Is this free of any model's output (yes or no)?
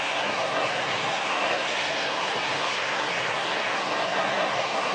no